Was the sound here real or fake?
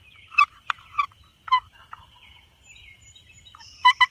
fake